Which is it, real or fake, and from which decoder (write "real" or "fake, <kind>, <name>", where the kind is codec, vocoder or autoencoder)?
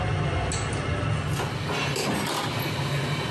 real